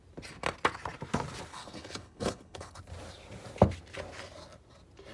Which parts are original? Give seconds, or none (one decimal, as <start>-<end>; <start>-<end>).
0.0-1.5; 2.8-5.1